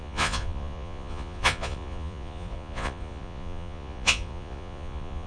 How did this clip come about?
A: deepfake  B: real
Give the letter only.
A